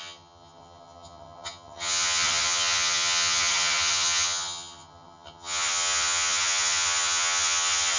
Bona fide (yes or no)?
no